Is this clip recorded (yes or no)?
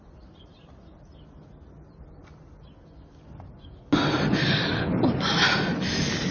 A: yes